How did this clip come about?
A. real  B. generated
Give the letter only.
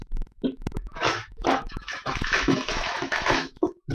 B